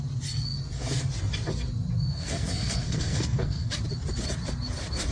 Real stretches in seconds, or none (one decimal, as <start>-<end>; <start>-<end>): 0.0-2.1; 3.7-5.1